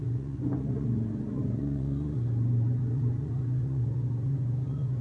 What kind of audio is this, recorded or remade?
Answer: remade